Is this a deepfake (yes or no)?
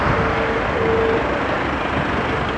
no